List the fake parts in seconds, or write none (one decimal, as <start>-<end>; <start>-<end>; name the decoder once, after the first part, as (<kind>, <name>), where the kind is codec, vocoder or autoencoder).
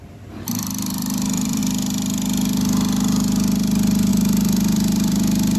0.0-1.6 (vocoder, BigVGAN v2); 4.1-5.6